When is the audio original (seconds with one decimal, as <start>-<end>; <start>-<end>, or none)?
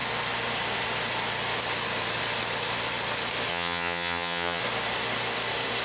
0.0-3.5; 4.6-5.8